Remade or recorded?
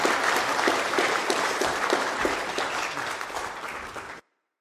recorded